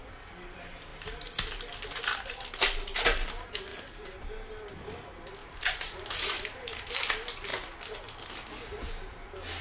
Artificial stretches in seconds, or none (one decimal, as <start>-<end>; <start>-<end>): 3.7-4.2; 5.4-7.0